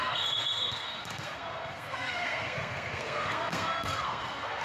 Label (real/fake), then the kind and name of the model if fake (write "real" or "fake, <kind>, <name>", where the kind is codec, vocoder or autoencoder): fake, codec, SNAC